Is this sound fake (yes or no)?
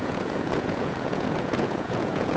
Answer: yes